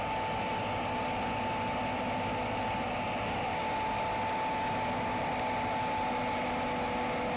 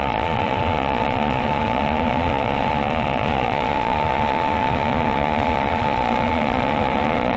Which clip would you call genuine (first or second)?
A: first